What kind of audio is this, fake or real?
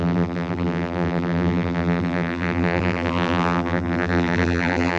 fake